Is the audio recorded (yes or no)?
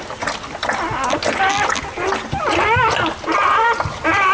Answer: yes